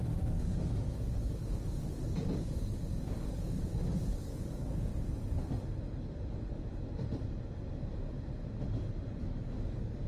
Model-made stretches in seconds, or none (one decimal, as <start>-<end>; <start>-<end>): 0.0-4.9; 9.2-10.1